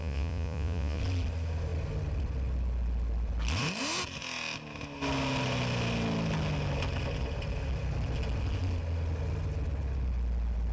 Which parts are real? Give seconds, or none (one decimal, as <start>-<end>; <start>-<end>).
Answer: 1.0-10.7